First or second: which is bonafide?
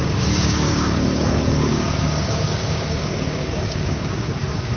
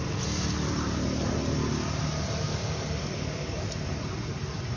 second